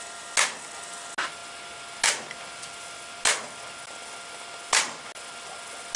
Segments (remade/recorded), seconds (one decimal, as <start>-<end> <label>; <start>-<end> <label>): 0.0-6.0 recorded